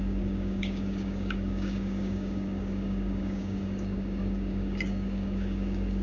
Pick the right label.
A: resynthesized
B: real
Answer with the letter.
A